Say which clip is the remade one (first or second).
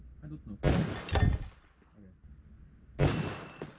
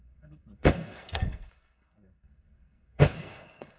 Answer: second